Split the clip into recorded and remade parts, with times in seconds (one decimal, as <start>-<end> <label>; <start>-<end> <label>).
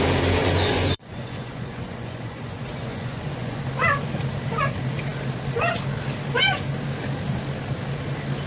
0.0-0.4 recorded; 0.4-3.6 remade; 3.6-8.5 recorded